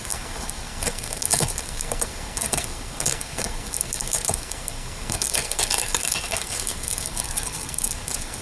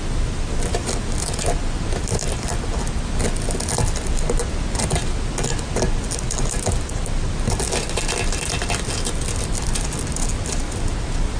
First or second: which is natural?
second